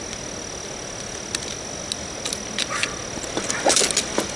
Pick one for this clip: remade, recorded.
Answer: recorded